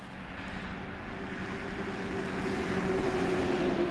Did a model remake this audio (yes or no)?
no